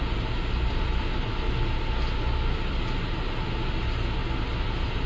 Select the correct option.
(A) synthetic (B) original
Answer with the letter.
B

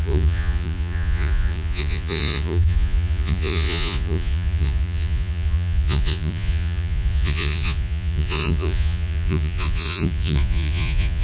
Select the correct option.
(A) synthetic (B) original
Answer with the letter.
A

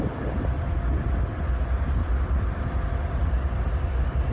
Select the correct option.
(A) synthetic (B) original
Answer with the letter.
B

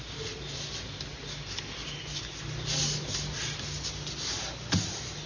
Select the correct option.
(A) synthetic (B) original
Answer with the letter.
B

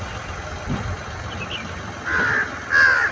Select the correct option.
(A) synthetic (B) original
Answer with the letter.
B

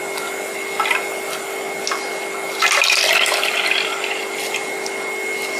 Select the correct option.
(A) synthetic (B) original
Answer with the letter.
B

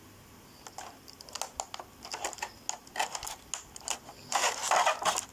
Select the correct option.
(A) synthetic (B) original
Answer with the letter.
B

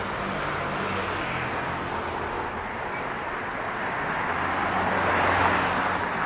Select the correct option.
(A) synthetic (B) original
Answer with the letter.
B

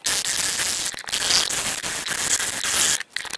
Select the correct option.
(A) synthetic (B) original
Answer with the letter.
B